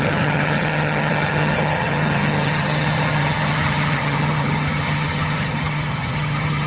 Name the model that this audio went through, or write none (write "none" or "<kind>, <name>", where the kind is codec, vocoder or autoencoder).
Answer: vocoder, HiFi-GAN